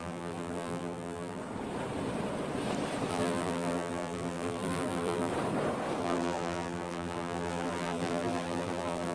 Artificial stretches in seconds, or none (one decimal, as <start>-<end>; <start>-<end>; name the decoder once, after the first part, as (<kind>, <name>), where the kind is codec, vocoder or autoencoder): 0.0-1.4 (vocoder, BigVGAN v2); 3.1-5.3; 6.0-9.1